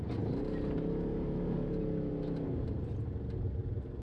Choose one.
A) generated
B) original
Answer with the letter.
B